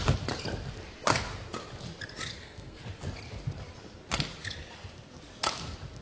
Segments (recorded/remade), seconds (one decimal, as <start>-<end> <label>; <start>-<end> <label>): 0.0-2.3 recorded; 2.3-2.8 remade; 2.8-6.0 recorded